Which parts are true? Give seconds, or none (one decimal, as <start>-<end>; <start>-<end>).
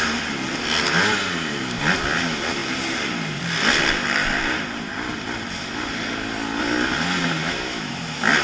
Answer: 0.0-7.4; 7.9-8.4